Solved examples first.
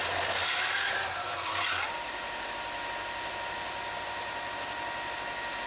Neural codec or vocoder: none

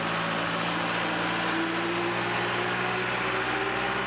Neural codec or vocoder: none